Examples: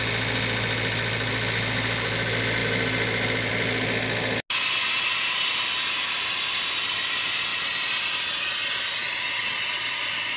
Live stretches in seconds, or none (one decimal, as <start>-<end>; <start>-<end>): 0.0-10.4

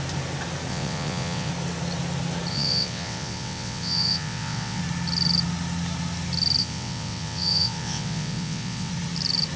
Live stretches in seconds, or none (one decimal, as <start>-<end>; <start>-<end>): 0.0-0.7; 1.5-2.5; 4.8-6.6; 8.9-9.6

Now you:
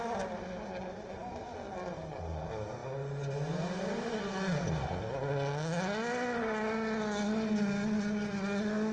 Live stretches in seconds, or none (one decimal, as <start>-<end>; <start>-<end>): 0.0-8.9

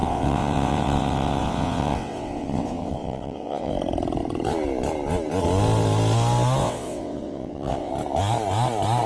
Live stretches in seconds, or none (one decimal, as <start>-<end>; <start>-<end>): 3.7-6.6; 7.9-9.1

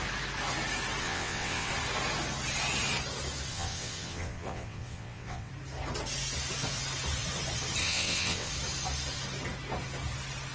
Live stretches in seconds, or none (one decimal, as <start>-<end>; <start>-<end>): 0.0-1.0; 1.7-3.5; 5.5-7.8; 8.5-10.5

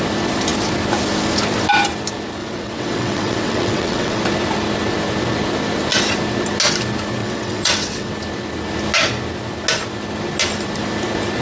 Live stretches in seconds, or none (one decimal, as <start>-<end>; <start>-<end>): 0.0-2.4; 4.2-7.2; 8.1-11.4

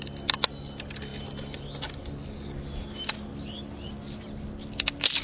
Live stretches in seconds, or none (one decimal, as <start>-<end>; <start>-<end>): 0.0-5.2

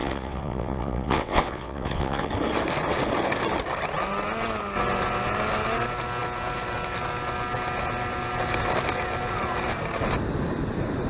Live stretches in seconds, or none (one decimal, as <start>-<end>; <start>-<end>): 2.3-11.1